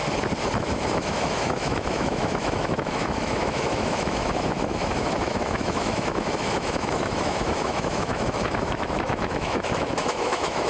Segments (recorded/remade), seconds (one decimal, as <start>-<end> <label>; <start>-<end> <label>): 0.0-0.6 recorded; 0.6-10.7 remade